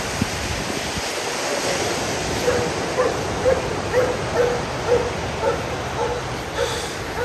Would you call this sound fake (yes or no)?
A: no